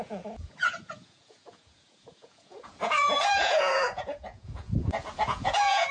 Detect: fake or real fake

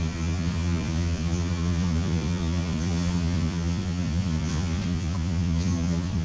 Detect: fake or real fake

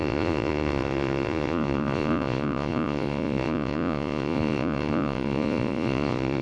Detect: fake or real fake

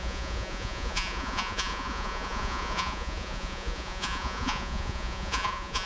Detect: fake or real fake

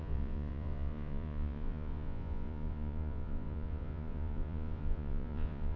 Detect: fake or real fake